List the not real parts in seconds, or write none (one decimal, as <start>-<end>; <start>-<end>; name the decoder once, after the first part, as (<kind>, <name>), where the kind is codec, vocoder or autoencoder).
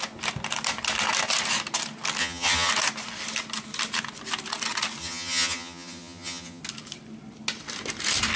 2.2-2.7 (vocoder, HiFi-GAN); 5.0-6.6